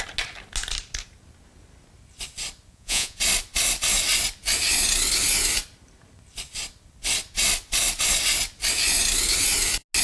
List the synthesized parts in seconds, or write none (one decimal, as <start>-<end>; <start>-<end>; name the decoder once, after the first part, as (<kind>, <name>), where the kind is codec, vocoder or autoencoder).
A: 2.7-3.2 (vocoder, Vocos)